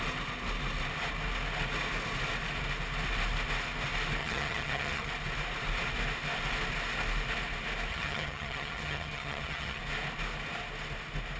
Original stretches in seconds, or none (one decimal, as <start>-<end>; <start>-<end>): 0.0-4.2; 5.1-7.9; 9.8-11.4